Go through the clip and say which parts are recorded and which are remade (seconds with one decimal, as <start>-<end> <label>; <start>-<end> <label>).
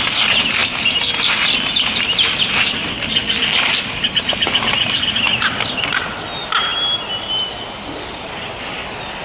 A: 0.0-9.2 recorded